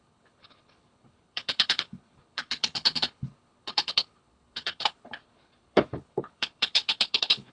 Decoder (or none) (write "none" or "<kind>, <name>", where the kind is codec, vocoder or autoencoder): codec, HILCodec